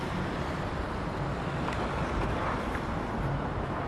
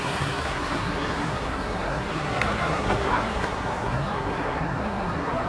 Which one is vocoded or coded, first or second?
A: second